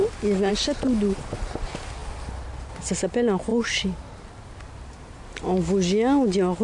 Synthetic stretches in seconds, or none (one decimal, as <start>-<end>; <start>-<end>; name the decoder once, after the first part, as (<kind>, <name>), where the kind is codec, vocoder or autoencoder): none